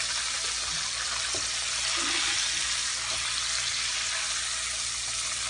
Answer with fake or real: real